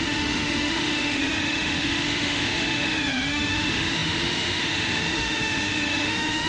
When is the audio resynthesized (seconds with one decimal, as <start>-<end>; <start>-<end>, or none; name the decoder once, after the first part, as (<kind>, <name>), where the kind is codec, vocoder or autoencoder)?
0.0-6.5 (autoencoder, DAC-VAE)